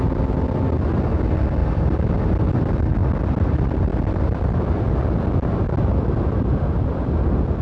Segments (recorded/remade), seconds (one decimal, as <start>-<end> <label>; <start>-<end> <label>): 0.0-1.6 recorded; 1.6-2.1 remade; 2.1-7.6 recorded